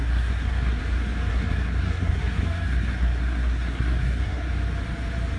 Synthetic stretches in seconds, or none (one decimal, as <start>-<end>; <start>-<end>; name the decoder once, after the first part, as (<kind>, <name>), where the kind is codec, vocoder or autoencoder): 0.0-0.8 (codec, SNAC); 1.3-4.5